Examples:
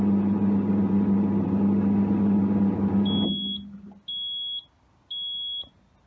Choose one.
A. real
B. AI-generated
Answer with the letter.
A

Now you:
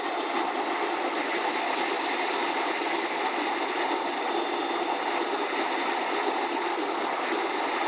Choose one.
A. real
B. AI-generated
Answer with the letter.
A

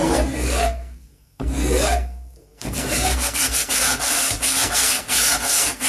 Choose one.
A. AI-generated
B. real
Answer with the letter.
A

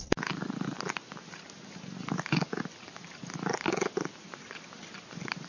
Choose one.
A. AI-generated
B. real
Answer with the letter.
B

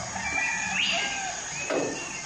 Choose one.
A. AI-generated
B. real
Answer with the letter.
B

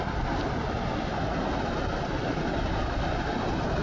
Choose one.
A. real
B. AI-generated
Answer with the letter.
A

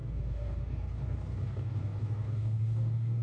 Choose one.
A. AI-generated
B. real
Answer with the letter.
A